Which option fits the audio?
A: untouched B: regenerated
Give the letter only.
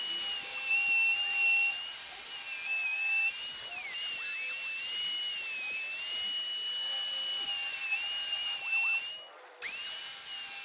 A